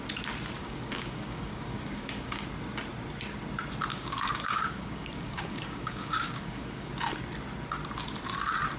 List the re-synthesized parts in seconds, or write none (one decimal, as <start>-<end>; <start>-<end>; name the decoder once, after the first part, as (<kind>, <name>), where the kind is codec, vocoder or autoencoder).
0.6-2.4 (codec, DAC); 3.9-6.9